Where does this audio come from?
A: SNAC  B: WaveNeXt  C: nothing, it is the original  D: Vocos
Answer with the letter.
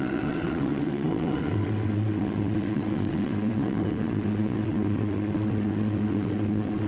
B